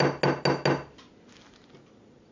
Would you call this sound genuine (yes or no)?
yes